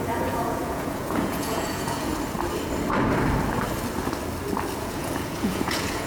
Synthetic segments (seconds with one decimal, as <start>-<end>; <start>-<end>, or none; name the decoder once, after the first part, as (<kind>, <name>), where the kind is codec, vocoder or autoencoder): 0.0-2.1 (vocoder, Vocos); 4.8-6.1